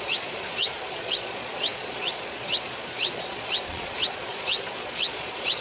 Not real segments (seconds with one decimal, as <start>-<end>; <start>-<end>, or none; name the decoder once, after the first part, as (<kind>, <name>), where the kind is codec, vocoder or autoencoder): 0.0-5.6 (vocoder, Vocos)